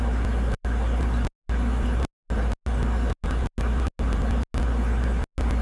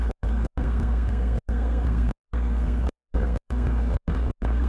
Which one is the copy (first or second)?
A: second